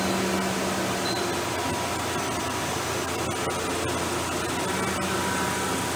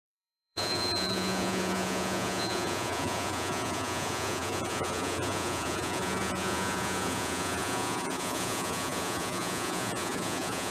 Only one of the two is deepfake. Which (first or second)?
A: second